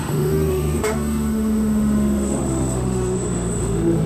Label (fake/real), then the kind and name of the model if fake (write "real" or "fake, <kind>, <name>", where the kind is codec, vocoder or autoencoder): fake, autoencoder, DAC-VAE